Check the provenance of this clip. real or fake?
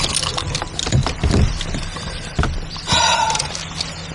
real